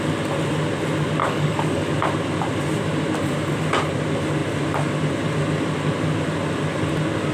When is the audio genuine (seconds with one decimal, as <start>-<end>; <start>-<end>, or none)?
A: 0.0-1.2; 1.9-7.3